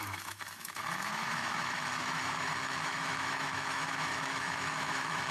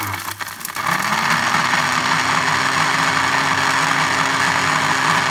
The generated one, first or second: first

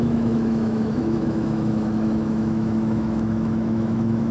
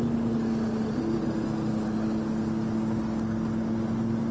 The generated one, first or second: first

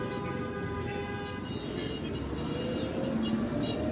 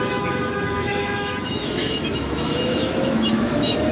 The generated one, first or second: second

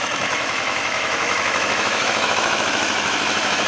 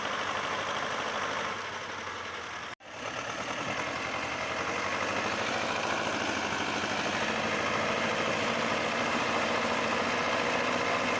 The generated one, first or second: first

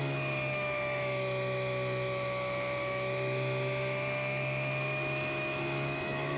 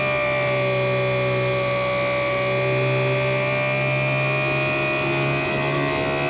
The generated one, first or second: first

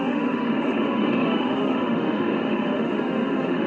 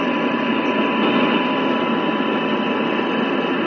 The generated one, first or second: first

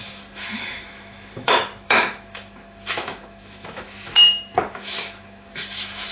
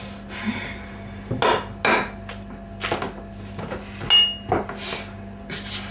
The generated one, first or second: first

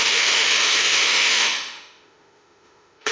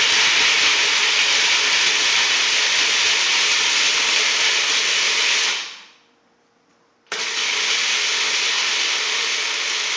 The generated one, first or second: first